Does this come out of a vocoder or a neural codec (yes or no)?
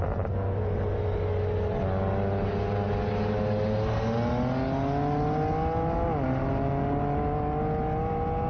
no